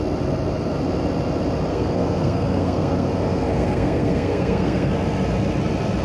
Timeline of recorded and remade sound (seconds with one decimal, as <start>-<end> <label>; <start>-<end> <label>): 0.0-1.7 recorded; 1.7-4.9 remade; 4.9-6.0 recorded